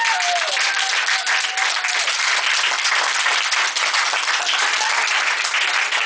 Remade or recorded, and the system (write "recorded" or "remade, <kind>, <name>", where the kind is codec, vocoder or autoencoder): recorded